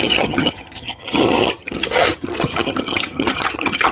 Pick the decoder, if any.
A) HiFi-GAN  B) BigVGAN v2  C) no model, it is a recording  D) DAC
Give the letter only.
A